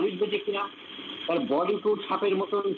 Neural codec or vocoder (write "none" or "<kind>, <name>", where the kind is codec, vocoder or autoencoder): vocoder, BigVGAN v2